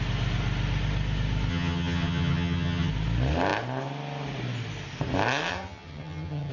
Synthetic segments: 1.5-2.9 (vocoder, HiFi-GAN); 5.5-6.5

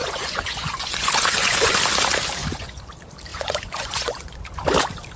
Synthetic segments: 0.0-1.8 (vocoder, Vocos); 2.4-2.9; 3.3-4.4

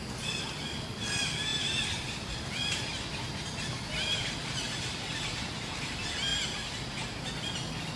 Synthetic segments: none

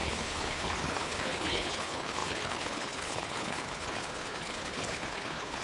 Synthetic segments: 0.0-5.6 (codec, HILCodec)

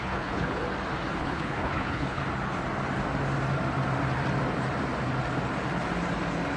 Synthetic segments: 0.0-0.6 (codec, HILCodec); 1.2-2.2